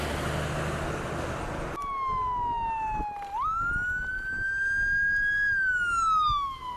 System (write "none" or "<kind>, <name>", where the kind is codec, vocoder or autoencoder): none